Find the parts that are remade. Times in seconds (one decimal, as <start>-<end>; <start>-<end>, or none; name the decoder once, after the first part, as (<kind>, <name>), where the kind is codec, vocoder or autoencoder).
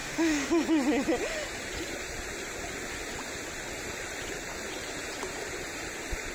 0.0-0.5 (autoencoder, DAC-VAE)